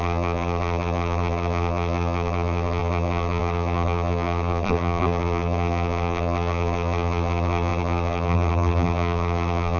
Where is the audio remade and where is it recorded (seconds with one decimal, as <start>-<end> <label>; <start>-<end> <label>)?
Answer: 0.0-9.8 remade